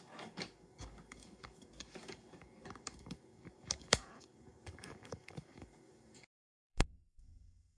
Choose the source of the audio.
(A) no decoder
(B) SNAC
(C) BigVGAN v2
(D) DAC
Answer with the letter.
D